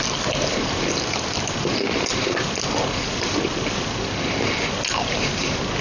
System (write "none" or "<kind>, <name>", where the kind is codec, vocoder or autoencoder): none